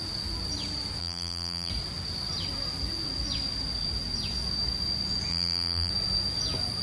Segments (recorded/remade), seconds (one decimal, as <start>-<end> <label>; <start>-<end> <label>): 0.0-1.0 recorded; 1.0-1.7 remade; 1.7-5.3 recorded; 5.3-5.9 remade; 5.9-6.8 recorded